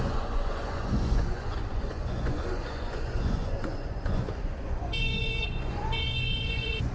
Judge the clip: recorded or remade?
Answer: remade